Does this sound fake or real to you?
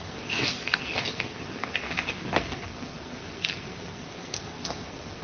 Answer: fake